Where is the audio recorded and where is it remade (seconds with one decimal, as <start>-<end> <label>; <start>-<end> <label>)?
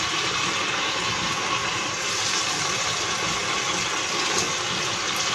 0.0-1.6 recorded; 1.6-2.1 remade; 2.1-5.3 recorded